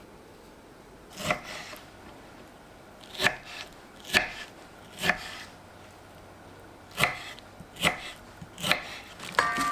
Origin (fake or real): real